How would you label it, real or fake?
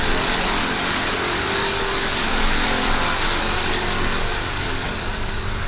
fake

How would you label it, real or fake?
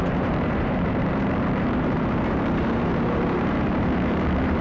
fake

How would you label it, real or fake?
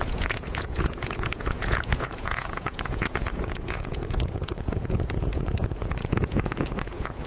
fake